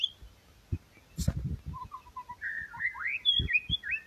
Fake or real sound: real